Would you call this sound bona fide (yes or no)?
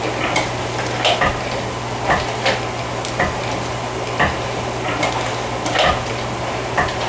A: yes